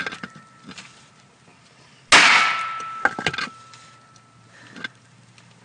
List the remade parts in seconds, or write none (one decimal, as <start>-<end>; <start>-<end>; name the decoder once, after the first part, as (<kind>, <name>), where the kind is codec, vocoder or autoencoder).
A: none